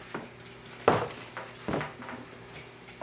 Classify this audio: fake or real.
real